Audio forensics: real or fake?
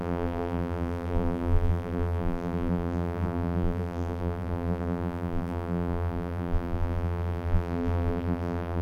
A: fake